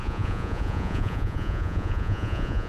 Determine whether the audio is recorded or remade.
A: remade